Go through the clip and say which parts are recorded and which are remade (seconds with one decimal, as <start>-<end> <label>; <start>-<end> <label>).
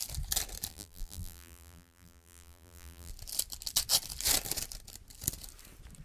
0.0-0.7 recorded; 0.7-3.1 remade; 3.1-6.0 recorded